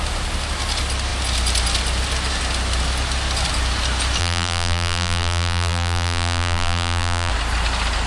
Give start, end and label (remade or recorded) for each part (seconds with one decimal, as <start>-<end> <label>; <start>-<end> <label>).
0.0-4.2 recorded; 4.2-7.3 remade; 7.3-8.1 recorded